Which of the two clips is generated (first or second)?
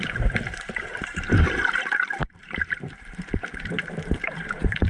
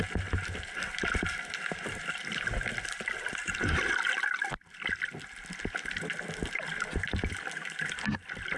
first